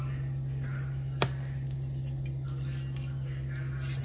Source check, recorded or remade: recorded